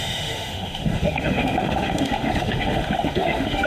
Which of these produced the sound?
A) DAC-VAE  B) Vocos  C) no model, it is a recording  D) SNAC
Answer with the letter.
A